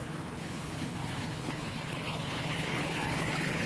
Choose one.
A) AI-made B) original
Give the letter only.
A